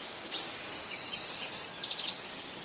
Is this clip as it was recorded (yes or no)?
yes